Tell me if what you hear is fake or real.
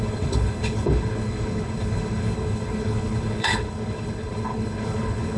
fake